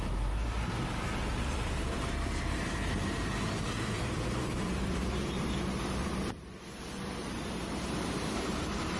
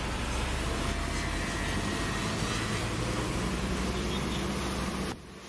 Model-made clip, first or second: first